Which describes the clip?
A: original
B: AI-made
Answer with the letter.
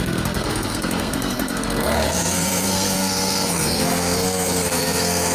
B